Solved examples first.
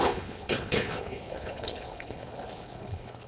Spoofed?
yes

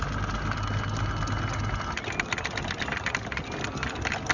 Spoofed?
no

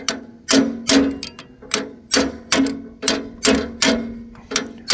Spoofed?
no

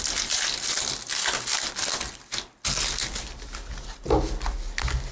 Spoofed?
no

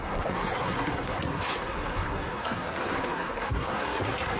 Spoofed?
yes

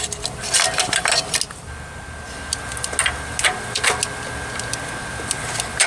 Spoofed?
no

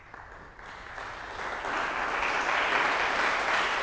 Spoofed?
no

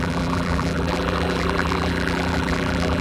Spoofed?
yes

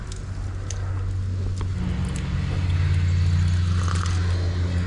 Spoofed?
no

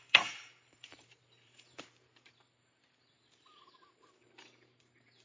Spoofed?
yes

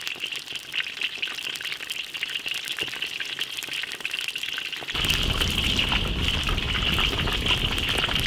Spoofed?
no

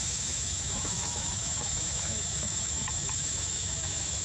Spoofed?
yes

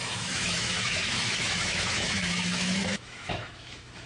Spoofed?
yes